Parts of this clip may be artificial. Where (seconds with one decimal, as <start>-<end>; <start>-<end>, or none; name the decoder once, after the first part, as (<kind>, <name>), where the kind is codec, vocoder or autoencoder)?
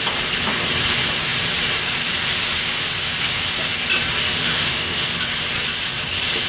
4.4-5.1 (autoencoder, DAC-VAE)